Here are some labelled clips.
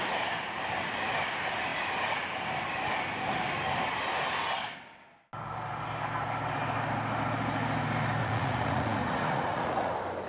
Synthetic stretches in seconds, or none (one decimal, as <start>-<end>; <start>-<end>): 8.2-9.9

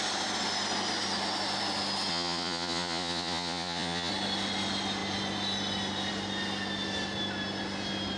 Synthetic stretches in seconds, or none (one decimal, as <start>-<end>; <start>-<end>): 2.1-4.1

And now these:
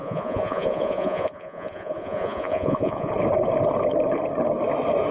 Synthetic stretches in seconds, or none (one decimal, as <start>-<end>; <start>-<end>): 0.0-3.1